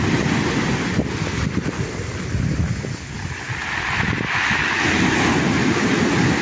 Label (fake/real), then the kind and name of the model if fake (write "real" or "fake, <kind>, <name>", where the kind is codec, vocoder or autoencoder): real